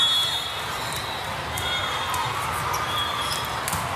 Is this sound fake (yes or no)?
no